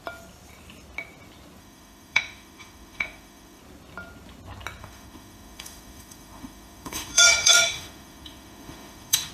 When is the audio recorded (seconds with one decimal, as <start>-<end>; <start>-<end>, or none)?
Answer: 0.0-1.6; 3.6-4.8